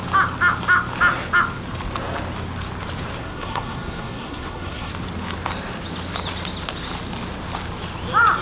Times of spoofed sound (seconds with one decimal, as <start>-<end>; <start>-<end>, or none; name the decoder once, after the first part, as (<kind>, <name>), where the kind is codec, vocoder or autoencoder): 3.2-4.9 (codec, SNAC)